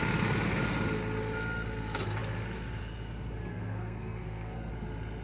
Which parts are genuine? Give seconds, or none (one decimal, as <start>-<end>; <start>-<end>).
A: 0.0-3.5; 4.7-5.2